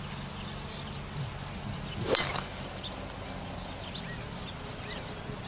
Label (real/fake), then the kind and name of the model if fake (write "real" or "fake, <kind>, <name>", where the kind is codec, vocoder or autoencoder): real